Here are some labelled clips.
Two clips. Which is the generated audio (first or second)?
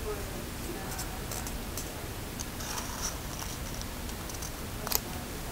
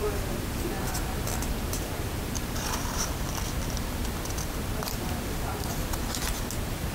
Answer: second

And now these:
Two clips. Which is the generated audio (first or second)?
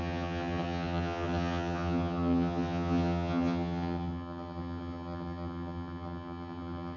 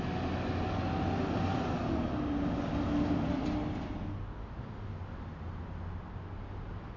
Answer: first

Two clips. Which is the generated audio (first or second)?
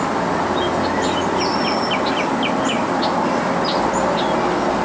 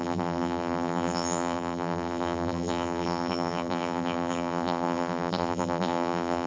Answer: second